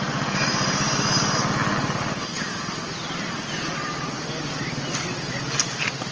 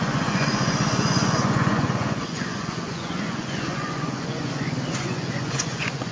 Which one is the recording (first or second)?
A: first